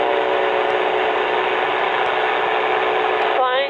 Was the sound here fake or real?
real